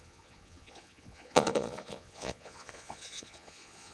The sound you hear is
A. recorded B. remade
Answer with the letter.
B